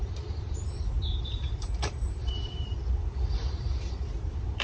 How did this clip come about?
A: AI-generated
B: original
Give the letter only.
A